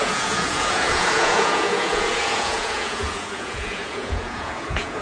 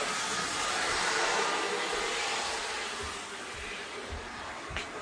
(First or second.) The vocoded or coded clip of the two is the first